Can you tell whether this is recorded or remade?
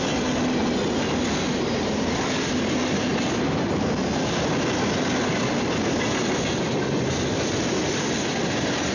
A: recorded